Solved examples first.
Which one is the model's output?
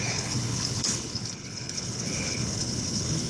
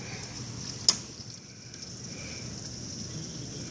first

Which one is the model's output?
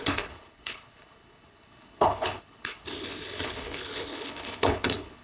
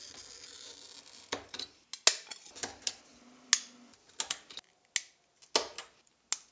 first